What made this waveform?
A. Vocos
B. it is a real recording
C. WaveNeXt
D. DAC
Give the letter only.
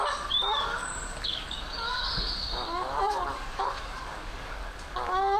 D